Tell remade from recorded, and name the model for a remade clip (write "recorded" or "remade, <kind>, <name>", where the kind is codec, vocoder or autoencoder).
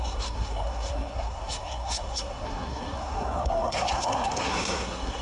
remade, codec, SNAC